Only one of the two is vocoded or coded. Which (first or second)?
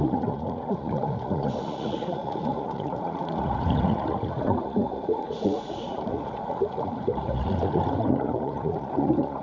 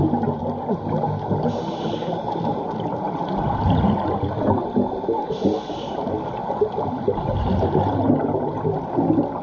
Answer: first